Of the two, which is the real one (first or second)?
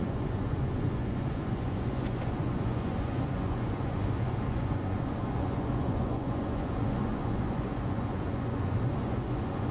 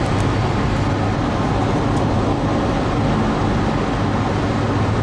second